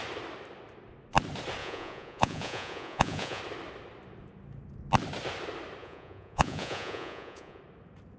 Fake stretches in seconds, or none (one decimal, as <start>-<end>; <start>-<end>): 1.6-3.4; 5.8-7.6